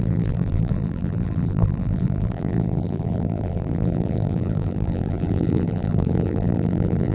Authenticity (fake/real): fake